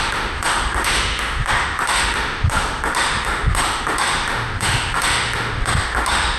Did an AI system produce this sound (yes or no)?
yes